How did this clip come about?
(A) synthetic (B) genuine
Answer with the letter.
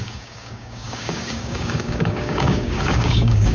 A